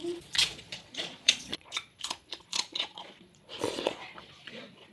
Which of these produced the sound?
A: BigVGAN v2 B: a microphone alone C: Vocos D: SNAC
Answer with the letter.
C